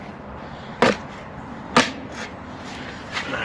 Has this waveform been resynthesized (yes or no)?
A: no